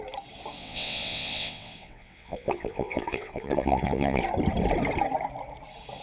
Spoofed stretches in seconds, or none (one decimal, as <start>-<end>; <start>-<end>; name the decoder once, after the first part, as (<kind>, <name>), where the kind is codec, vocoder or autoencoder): 0.6-4.2 (vocoder, WaveNeXt)